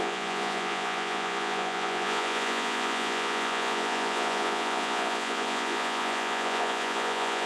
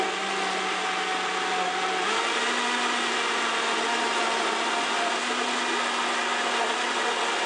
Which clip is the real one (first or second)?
second